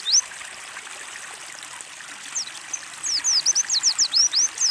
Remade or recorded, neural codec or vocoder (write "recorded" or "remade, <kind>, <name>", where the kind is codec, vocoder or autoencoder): recorded